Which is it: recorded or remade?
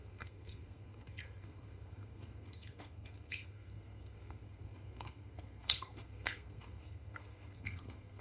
remade